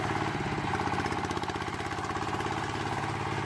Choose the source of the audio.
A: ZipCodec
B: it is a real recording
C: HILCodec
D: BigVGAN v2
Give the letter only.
B